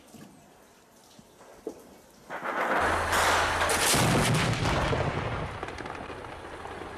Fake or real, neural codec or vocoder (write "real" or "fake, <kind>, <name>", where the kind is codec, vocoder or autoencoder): real